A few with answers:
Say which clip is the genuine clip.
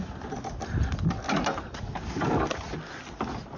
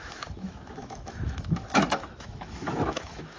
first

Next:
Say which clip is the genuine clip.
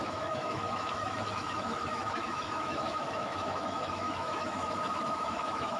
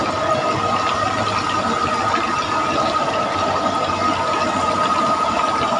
second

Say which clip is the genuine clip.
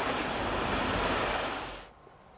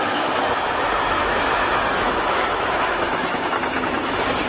first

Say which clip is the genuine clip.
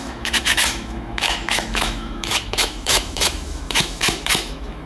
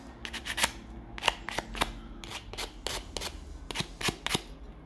second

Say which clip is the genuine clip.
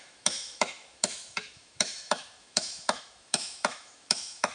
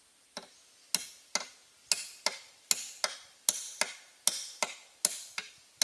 second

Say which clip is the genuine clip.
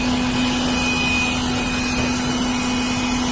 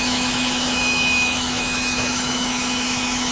first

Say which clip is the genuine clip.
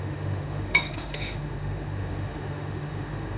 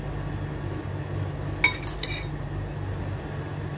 second